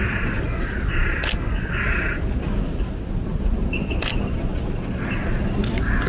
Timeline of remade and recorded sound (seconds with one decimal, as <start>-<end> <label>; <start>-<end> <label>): 0.0-6.1 recorded